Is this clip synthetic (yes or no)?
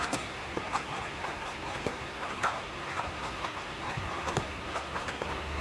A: yes